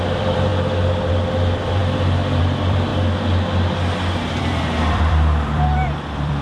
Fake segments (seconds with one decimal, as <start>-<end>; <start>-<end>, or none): 0.0-0.5; 1.1-1.8; 2.4-2.9; 4.4-6.4